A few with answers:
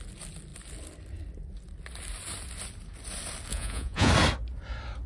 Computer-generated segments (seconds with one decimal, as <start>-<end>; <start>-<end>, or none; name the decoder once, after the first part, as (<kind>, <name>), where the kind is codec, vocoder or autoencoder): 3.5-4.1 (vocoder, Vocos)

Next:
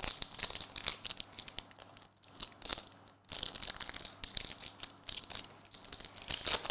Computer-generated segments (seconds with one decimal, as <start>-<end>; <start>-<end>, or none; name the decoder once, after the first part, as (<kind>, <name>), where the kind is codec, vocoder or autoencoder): none

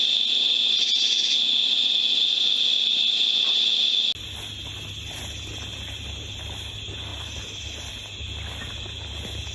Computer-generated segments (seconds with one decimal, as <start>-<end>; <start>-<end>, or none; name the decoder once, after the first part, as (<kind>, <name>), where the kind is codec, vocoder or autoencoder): 5.7-6.2 (vocoder, BigVGAN v2); 7.1-7.9

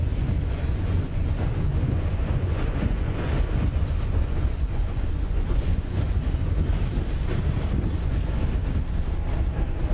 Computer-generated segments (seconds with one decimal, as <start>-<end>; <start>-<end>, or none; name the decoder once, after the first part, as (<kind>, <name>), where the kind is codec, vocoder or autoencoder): 0.0-6.8 (vocoder, Vocos)

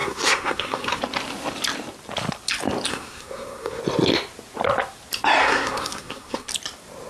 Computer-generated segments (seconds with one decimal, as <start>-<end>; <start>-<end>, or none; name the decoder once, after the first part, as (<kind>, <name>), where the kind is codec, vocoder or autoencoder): 0.0-1.0 (codec, SNAC); 2.9-3.8; 5.4-6.5

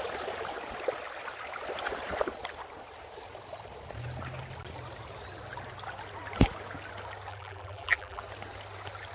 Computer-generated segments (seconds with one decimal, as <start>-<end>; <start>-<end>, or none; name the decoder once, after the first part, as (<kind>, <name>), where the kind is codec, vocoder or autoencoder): 7.3-8.2 (vocoder, BigVGAN v2)

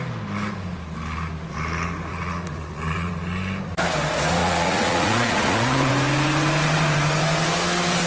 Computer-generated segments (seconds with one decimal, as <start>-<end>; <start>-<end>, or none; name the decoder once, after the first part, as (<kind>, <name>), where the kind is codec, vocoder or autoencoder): 2.1-3.1 (vocoder, Vocos); 4.4-5.9

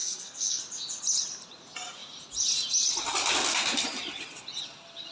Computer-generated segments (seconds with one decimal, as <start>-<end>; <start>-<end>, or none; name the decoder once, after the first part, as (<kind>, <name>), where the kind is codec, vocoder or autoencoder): 0.0-0.6 (codec, SNAC)